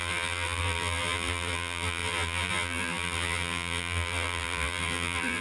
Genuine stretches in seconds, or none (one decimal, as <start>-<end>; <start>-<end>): none